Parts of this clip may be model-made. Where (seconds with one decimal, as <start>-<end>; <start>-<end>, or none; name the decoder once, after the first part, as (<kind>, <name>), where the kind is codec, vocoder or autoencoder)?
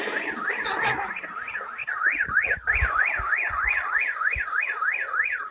1.8-4.6 (vocoder, Vocos)